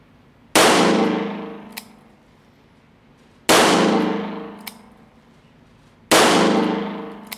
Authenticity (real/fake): real